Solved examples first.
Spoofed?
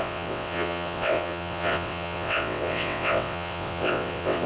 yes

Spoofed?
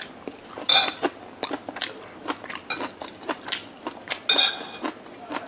no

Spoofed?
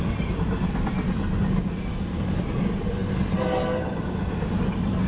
no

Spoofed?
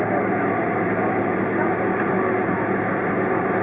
no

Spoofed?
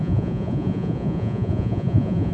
yes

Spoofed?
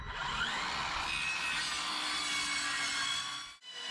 no